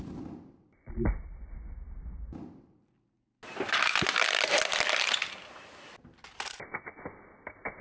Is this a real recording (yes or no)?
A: yes